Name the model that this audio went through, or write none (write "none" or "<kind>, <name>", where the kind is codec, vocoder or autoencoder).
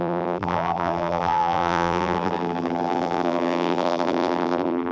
vocoder, BigVGAN v2